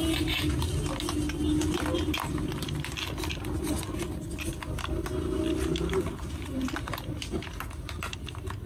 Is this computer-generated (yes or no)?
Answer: no